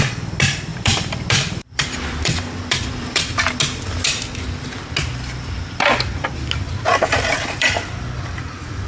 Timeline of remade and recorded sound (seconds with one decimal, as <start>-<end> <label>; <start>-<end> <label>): 0.0-0.7 recorded; 0.7-3.4 remade; 3.4-6.7 recorded; 6.7-7.8 remade; 7.8-8.9 recorded